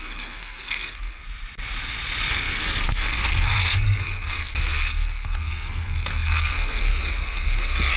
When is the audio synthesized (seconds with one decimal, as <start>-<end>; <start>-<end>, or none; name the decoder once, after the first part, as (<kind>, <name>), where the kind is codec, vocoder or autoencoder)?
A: 0.0-1.2 (codec, SNAC); 2.3-8.0